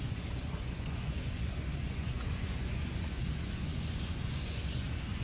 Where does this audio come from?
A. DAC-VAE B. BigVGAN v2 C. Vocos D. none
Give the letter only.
C